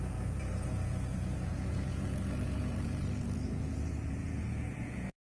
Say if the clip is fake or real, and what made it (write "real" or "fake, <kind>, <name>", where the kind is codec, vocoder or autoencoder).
fake, vocoder, Vocos